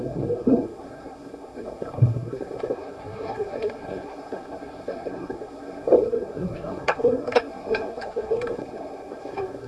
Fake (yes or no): yes